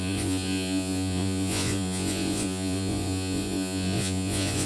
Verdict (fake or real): fake